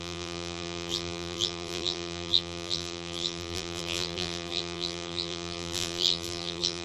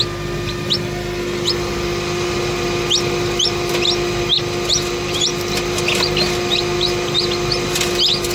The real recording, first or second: second